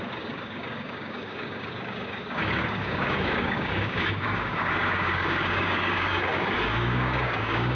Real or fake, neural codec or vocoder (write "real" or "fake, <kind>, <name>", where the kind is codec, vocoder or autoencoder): fake, codec, DAC